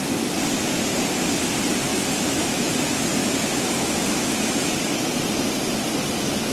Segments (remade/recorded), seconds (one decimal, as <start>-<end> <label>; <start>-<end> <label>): 0.0-1.9 recorded; 1.9-2.7 remade; 2.7-3.2 recorded; 3.2-5.1 remade; 5.1-6.5 recorded